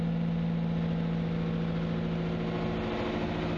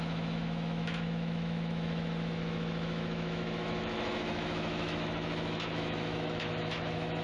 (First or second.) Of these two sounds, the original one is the first